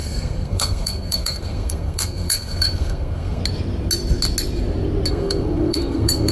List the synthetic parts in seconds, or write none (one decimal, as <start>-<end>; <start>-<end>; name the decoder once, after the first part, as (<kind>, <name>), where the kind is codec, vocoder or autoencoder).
0.0-3.4 (codec, SNAC); 5.1-6.3